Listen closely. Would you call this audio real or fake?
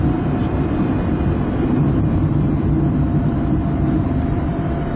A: fake